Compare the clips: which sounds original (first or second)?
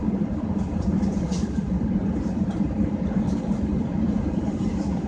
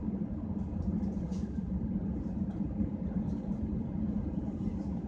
second